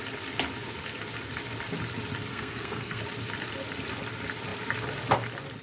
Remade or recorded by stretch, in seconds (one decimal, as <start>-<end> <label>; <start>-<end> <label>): 0.0-2.3 recorded; 2.3-3.0 remade; 3.0-5.6 recorded